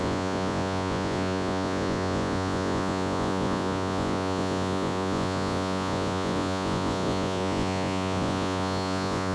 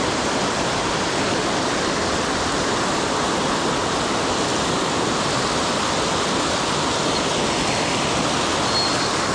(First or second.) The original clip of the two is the second